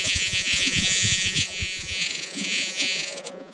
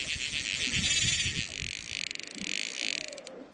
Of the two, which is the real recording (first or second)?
second